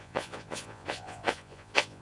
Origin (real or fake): fake